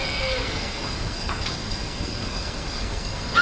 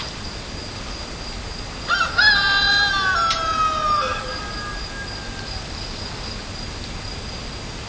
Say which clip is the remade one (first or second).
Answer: first